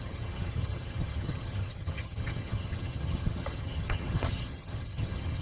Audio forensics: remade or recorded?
remade